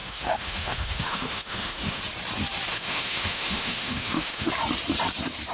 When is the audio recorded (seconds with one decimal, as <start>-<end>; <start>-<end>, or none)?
2.0-2.7; 4.5-5.5